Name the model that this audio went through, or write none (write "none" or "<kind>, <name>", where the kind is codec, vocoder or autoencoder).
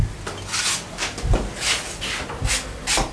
none